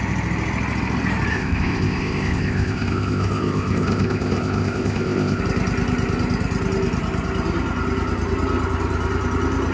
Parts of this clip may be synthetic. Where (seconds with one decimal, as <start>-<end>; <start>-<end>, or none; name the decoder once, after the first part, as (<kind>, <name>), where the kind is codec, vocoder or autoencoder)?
1.3-5.4 (codec, ZipCodec)